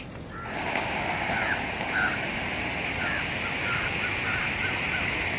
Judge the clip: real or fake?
real